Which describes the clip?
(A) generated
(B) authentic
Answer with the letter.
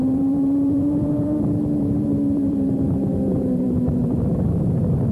A